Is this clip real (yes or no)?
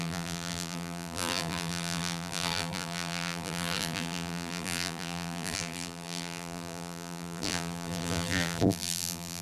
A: no